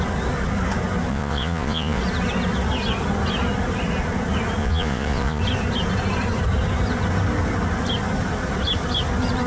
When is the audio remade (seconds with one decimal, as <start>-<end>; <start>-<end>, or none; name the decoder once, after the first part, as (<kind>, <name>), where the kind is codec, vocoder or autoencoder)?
1.1-2.0 (vocoder, Vocos); 4.6-5.4